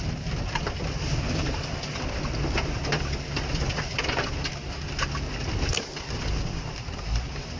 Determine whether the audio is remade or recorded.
recorded